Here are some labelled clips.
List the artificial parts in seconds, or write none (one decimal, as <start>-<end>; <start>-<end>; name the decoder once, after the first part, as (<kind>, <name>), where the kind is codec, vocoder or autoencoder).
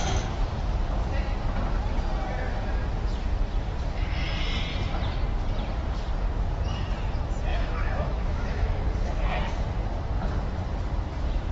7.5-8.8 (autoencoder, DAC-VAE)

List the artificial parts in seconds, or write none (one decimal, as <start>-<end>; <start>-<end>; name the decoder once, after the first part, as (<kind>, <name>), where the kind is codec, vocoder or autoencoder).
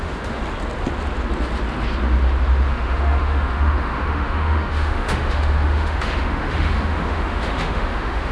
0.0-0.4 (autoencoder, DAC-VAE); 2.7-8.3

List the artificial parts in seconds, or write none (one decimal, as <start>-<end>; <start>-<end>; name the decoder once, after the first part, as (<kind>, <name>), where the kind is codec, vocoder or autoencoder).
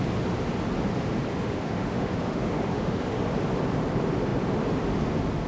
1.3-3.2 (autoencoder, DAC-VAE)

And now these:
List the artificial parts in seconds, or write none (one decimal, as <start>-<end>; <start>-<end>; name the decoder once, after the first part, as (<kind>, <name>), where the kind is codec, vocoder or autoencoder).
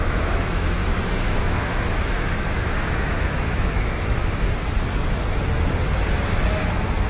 0.0-4.2 (autoencoder, DAC-VAE)